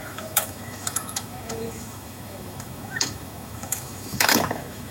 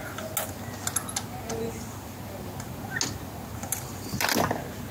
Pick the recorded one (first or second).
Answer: second